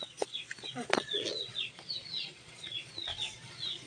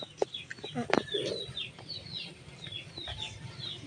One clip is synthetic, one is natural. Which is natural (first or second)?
second